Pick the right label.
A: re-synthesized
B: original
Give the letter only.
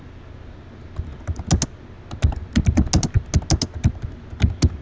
B